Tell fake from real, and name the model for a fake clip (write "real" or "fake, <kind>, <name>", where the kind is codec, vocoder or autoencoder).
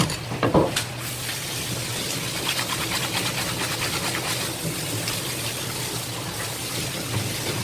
real